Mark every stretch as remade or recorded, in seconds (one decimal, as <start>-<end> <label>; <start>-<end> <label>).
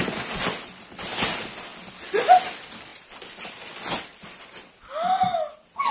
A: 0.0-2.9 recorded; 2.9-3.5 remade; 3.5-4.1 recorded; 4.1-5.9 remade